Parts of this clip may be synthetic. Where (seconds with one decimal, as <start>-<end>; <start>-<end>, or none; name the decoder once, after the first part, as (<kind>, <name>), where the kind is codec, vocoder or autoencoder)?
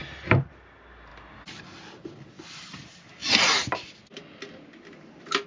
none